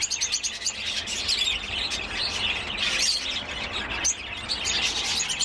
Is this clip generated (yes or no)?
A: no